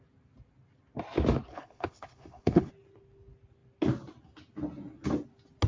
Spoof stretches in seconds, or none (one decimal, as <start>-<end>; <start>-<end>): 1.5-2.7